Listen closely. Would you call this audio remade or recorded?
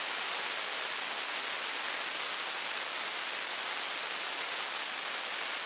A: recorded